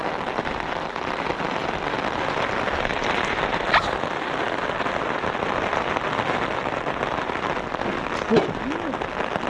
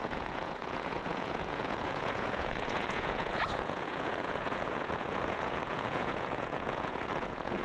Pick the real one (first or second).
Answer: first